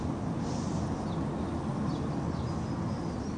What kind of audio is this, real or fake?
real